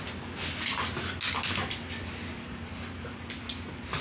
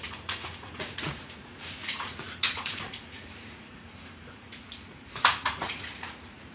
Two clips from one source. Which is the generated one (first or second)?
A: second